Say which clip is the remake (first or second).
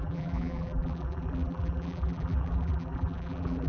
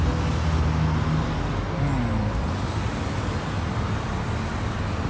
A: first